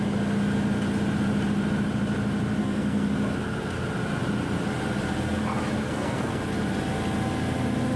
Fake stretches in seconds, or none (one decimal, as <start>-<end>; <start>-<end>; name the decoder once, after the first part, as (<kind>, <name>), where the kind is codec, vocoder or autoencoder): 2.6-3.1 (codec, SNAC); 5.8-6.4